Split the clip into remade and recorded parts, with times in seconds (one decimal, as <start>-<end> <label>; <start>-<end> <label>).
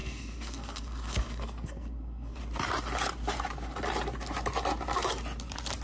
0.0-2.4 remade; 2.4-5.8 recorded